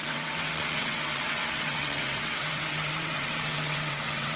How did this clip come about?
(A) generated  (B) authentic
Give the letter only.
A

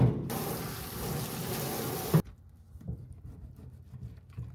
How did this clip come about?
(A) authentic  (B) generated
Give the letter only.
A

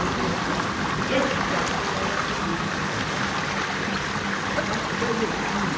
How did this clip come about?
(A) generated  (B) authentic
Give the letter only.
B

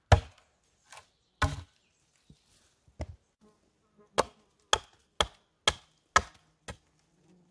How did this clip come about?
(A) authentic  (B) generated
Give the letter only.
A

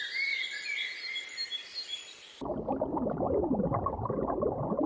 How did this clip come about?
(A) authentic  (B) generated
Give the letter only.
B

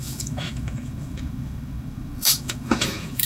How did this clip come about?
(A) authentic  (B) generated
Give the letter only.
B